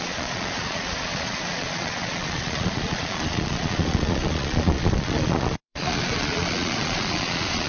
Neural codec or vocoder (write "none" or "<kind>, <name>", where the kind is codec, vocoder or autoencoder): vocoder, Vocos